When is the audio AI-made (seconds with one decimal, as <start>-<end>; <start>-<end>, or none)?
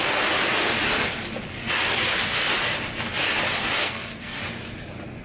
3.8-4.4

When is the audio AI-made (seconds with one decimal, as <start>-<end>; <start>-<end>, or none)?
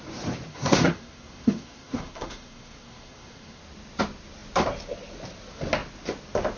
0.5-3.6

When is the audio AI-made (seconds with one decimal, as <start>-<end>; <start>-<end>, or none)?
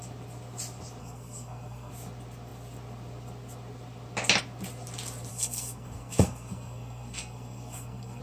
1.0-1.9; 5.3-8.2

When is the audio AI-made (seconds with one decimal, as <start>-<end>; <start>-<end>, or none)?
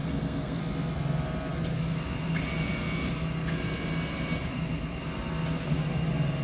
0.0-0.6